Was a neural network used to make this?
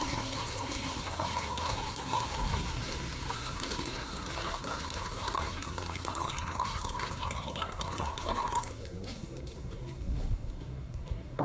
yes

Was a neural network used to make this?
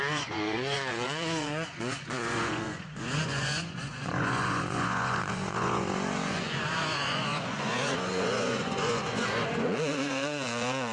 yes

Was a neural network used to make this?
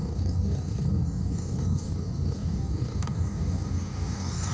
yes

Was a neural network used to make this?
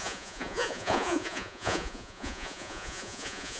yes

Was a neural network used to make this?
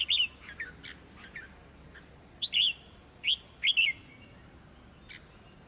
no